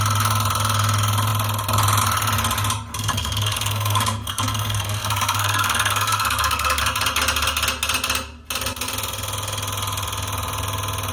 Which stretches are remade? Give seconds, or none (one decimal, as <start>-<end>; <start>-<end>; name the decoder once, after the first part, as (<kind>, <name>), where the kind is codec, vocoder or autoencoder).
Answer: 2.9-6.8 (codec, SNAC)